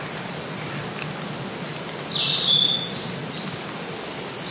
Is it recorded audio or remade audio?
recorded